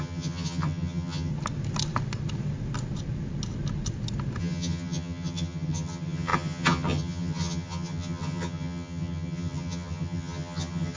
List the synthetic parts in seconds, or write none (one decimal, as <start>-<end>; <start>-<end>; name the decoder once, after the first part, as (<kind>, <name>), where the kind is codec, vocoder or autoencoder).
0.0-1.3 (vocoder, HiFi-GAN); 4.4-11.0